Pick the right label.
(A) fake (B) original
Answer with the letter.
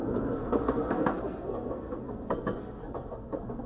A